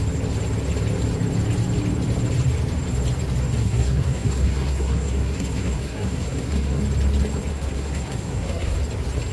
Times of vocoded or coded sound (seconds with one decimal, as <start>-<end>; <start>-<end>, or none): 3.6-6.8; 7.5-8.8